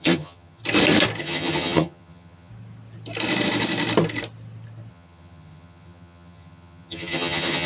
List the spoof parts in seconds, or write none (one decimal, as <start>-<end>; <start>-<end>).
0.0-0.6; 1.2-2.5; 4.9-7.7